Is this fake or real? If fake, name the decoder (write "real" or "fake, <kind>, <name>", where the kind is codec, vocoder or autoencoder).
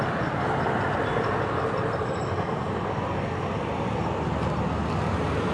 real